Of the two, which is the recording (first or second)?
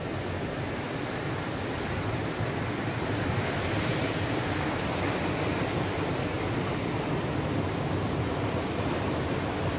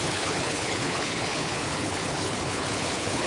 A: first